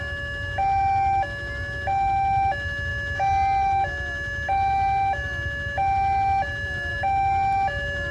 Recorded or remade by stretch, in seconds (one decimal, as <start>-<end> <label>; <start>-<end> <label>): 0.0-8.1 recorded